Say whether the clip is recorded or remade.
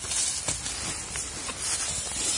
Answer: recorded